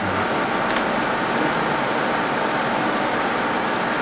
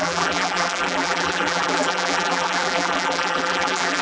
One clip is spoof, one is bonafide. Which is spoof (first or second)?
second